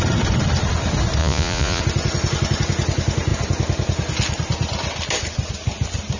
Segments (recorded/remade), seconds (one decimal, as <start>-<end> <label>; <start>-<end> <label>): 0.0-1.2 recorded; 1.2-1.8 remade; 1.8-6.2 recorded